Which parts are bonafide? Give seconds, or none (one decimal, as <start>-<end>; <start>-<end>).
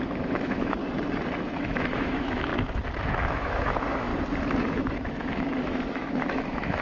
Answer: 0.8-1.6; 2.5-3.0; 4.1-4.6